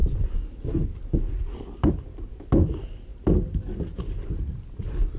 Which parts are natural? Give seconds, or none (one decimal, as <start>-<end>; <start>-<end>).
0.0-5.2